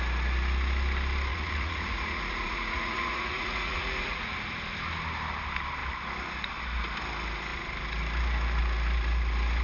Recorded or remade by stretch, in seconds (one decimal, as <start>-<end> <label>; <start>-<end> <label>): 0.0-1.3 recorded; 1.3-4.3 remade; 4.3-9.6 recorded